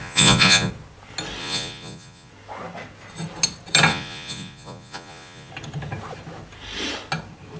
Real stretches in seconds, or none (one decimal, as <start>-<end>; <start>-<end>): 0.7-1.4; 2.3-3.9; 5.5-7.6

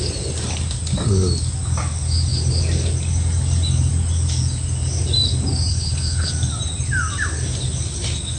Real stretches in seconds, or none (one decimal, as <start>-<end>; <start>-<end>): 0.0-5.7; 6.3-8.4

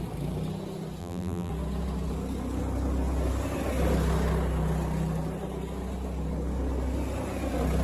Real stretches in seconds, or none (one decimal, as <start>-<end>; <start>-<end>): 0.0-1.0; 1.5-7.8